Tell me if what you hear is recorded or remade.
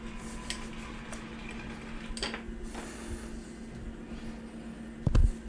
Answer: recorded